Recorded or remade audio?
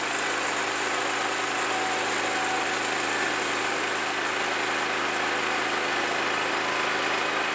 recorded